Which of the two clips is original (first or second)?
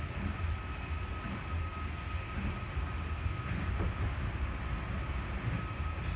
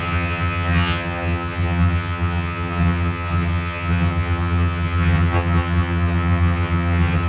first